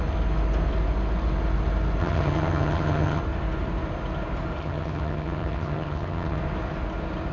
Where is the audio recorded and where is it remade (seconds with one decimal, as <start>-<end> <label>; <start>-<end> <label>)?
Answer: 0.0-2.0 recorded; 2.0-3.2 remade; 3.2-4.6 recorded; 4.6-6.4 remade; 6.4-7.3 recorded